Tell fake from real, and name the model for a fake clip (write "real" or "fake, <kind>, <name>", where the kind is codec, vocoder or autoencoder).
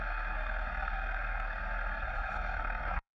fake, codec, SNAC